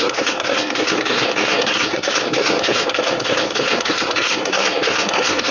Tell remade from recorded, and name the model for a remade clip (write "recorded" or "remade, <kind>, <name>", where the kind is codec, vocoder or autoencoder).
remade, codec, SNAC